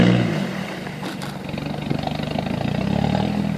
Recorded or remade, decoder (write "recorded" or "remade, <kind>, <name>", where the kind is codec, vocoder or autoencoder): recorded